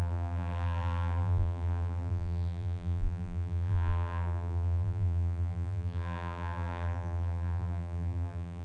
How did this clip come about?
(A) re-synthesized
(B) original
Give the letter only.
A